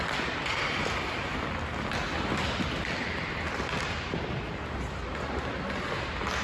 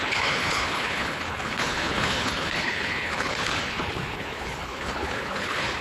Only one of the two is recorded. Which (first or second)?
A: first